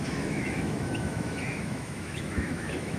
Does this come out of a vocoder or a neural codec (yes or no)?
yes